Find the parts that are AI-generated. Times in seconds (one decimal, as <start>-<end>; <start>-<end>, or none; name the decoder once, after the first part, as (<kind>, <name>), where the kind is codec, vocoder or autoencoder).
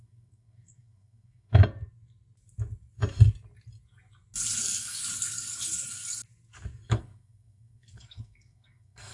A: 0.0-1.6 (codec, SNAC); 4.6-5.0; 6.9-9.1